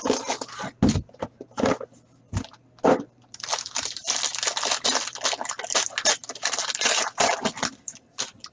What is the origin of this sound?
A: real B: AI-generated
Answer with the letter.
A